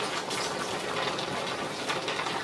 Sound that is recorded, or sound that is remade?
recorded